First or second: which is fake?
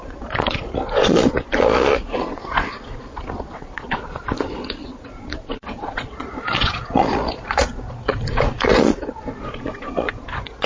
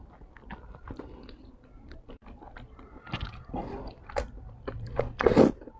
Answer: first